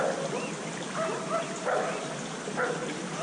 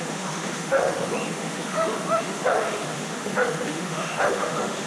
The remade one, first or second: second